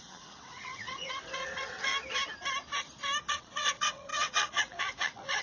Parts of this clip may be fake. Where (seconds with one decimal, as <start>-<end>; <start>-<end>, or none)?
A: 0.0-1.9; 3.3-5.4